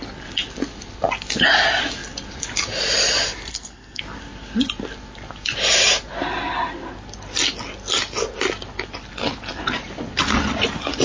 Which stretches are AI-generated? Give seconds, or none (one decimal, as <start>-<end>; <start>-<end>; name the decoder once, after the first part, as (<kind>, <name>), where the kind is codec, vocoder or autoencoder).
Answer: 3.5-4.0 (codec, SNAC)